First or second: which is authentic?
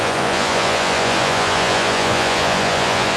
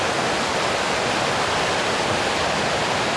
second